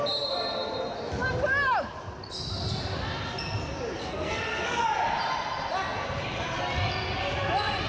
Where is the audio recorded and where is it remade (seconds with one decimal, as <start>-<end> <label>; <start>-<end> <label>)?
0.0-4.0 recorded; 4.0-4.8 remade; 4.8-7.9 recorded